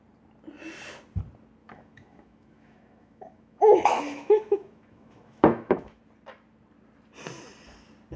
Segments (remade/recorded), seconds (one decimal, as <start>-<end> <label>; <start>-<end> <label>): 0.0-1.6 recorded; 1.6-6.0 remade; 6.0-8.2 recorded